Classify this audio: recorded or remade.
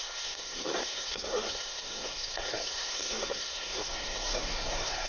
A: remade